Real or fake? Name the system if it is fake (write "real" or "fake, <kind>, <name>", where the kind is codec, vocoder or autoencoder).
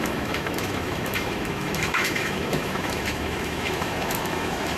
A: fake, autoencoder, DAC-VAE